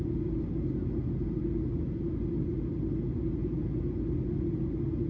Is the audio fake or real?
real